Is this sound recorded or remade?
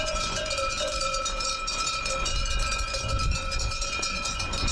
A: remade